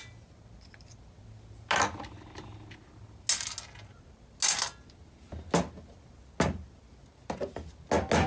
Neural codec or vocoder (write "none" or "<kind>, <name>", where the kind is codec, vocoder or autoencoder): none